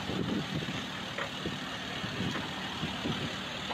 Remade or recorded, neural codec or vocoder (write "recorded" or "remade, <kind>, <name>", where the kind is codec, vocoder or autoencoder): recorded